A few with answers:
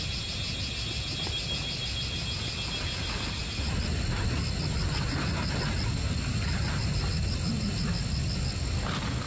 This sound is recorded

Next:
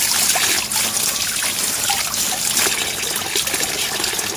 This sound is recorded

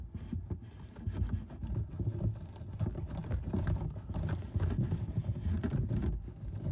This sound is recorded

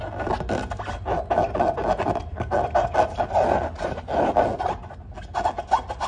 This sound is recorded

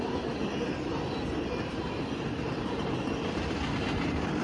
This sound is recorded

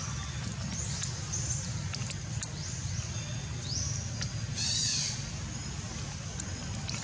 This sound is recorded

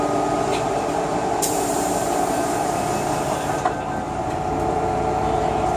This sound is remade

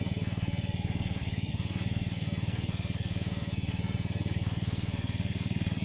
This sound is remade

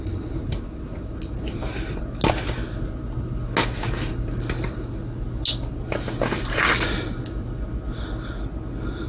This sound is recorded